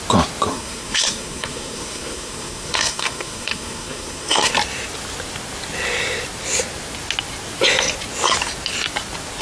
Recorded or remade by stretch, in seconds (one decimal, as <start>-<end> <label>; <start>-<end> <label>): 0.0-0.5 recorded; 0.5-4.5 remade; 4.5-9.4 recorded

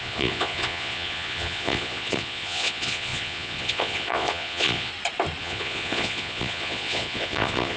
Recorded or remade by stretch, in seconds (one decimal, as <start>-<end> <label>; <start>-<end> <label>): 0.0-4.9 remade; 4.9-5.4 recorded; 5.4-7.8 remade

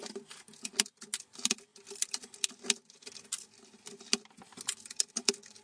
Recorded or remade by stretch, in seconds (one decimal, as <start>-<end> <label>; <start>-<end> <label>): 0.0-5.6 recorded

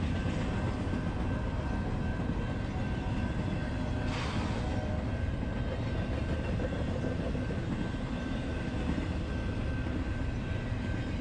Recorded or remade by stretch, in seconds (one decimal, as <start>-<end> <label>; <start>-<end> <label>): 0.0-11.2 recorded